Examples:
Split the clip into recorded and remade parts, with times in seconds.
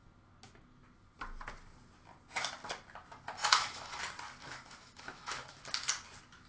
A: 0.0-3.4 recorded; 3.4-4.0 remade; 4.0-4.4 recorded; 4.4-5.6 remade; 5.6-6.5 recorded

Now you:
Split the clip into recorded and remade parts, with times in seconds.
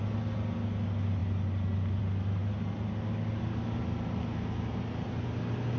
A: 0.0-5.8 recorded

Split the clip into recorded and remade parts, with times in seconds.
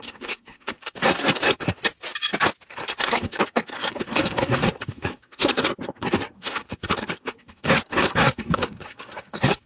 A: 0.0-1.8 remade; 1.8-2.7 recorded; 2.7-9.7 remade